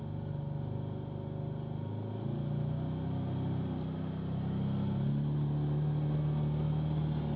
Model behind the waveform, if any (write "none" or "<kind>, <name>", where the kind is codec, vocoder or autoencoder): none